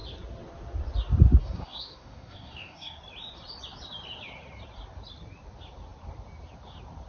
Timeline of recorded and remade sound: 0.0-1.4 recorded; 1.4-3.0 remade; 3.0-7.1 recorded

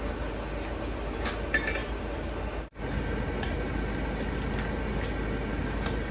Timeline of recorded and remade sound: 0.0-6.1 recorded